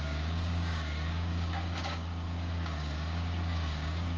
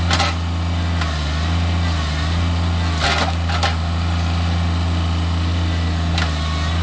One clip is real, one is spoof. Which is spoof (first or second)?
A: first